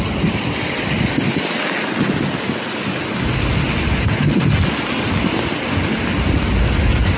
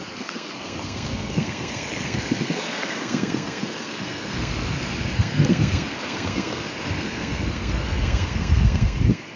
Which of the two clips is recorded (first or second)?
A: first